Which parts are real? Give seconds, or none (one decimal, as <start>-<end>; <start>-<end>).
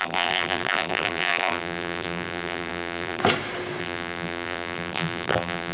3.2-3.8